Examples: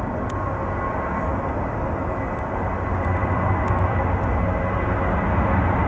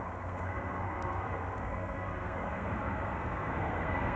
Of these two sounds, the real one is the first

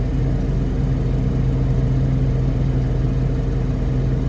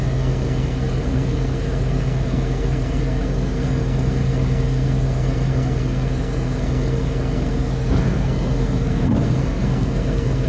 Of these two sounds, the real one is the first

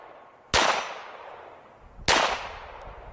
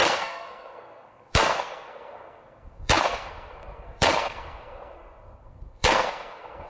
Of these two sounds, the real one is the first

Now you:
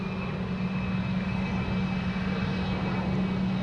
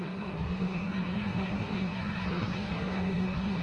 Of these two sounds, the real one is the first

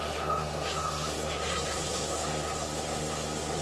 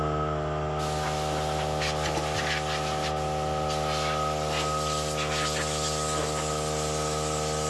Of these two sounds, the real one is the second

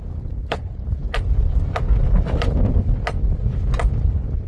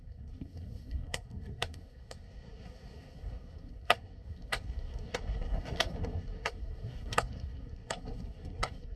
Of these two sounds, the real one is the first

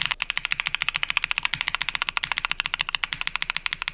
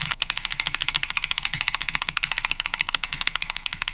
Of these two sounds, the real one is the first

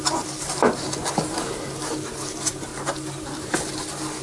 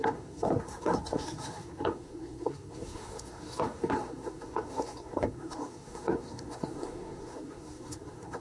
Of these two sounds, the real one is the first